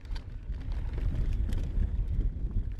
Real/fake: real